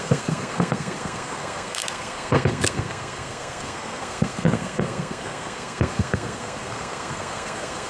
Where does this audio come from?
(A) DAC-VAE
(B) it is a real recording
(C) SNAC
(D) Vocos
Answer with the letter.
C